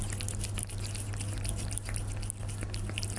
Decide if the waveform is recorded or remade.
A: recorded